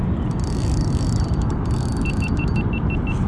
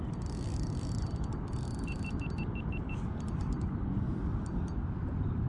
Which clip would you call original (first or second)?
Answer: first